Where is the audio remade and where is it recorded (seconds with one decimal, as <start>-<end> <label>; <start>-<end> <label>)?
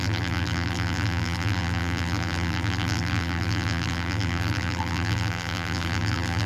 0.0-6.5 remade